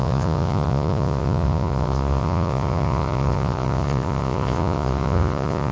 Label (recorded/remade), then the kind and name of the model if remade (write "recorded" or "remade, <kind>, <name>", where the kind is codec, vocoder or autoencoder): remade, vocoder, Vocos